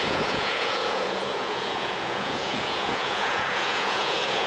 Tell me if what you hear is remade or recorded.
remade